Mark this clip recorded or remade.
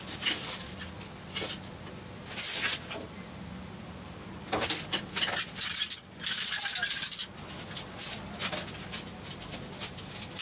recorded